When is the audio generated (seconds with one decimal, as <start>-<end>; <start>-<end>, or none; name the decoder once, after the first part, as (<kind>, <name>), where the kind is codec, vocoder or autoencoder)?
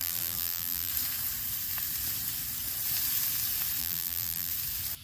0.0-0.9 (vocoder, BigVGAN v2); 3.8-4.5